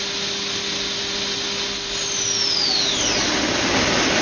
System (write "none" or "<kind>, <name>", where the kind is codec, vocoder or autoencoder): none